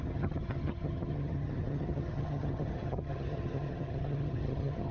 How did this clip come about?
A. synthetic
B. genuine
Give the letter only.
A